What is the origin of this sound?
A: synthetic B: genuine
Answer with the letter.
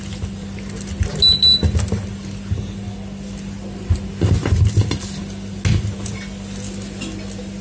B